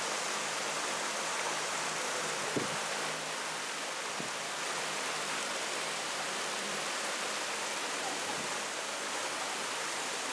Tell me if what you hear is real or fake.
real